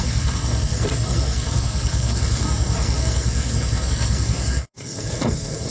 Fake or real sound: fake